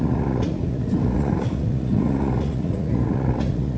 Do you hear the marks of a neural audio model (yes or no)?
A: yes